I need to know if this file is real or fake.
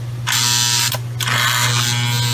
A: real